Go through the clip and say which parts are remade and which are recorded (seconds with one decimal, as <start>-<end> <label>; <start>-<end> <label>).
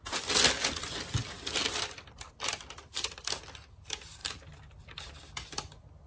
0.0-6.1 recorded